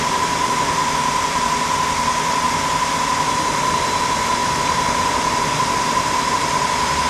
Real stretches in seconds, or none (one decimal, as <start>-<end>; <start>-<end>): 0.0-7.1

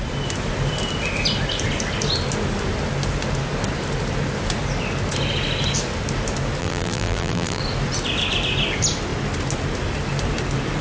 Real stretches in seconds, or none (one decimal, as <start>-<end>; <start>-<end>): 0.0-6.6; 7.6-10.8

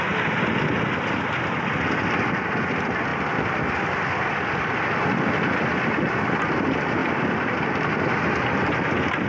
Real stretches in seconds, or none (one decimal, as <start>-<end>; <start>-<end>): 0.0-3.1; 6.1-7.0

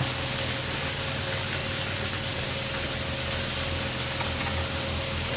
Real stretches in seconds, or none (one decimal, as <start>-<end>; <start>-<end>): 0.0-5.4

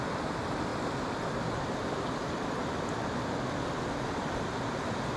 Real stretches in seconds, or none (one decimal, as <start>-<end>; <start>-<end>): 0.0-5.2

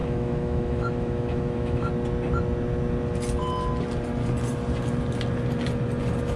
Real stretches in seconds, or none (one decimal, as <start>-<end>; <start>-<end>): 1.9-6.4

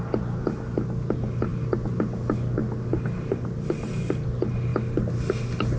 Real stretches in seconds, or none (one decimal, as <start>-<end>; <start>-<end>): 0.0-5.8